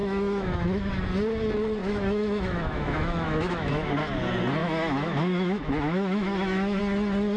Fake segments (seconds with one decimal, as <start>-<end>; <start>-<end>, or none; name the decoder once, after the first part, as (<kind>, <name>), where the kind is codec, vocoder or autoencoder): 0.0-0.9 (autoencoder, DAC-VAE); 1.8-3.9; 4.6-6.8